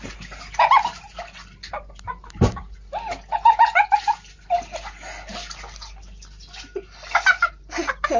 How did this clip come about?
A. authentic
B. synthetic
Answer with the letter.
A